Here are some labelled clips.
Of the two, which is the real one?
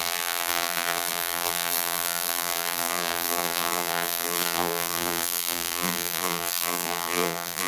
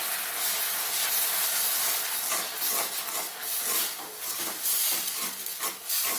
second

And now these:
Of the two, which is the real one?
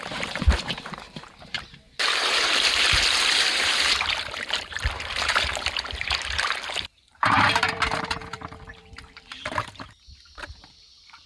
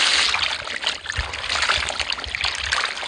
second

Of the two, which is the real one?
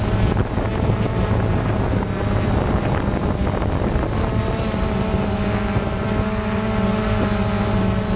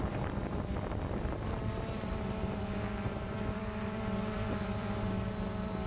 first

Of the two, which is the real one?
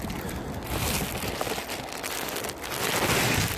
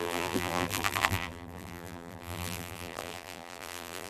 first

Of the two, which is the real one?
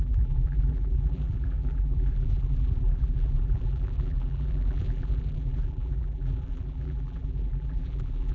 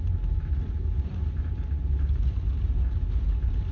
second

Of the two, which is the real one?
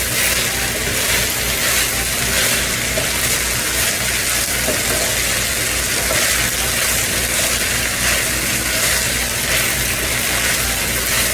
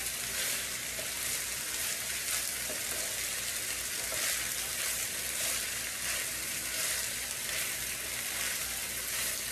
first